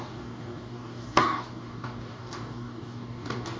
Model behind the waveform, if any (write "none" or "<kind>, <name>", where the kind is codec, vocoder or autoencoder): codec, DAC